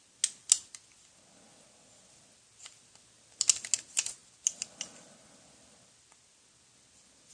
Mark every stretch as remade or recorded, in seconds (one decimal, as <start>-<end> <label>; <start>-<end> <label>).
0.0-7.3 recorded